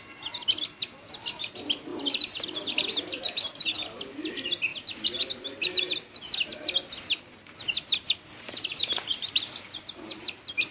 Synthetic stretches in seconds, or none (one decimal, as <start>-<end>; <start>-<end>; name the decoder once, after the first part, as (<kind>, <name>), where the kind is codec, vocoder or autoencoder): none